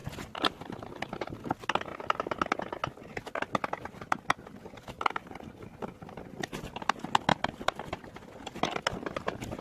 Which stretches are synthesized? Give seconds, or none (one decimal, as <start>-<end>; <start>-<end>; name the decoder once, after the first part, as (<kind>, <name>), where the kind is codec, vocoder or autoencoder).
none